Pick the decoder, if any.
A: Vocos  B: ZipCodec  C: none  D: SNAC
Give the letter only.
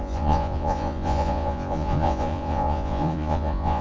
A